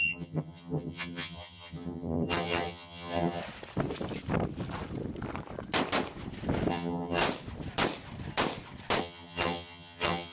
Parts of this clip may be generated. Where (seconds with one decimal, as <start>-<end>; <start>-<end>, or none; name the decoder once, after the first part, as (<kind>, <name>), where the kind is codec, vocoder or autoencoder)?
0.0-3.4 (vocoder, HiFi-GAN); 6.7-7.2; 9.0-10.3